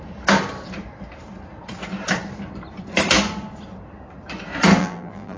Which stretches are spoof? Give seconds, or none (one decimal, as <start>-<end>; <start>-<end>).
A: 4.8-5.4